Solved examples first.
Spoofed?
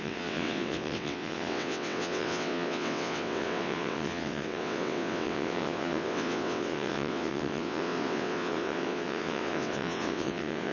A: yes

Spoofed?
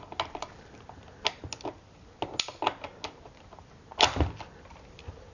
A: no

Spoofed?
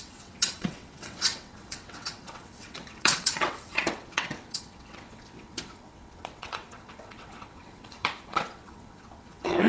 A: yes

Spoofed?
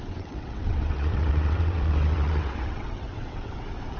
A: yes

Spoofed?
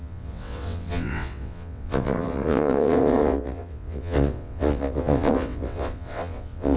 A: yes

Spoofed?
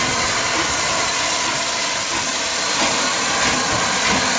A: no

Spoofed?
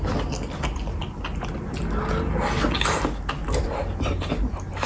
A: no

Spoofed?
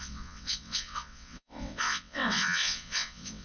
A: yes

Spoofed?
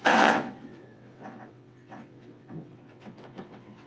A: yes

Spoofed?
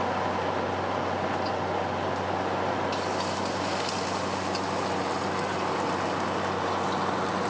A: no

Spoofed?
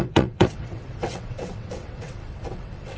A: yes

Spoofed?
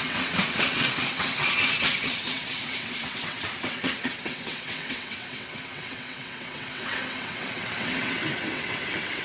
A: yes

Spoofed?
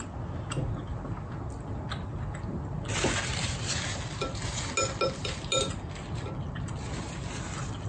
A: no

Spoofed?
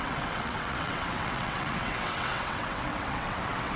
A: yes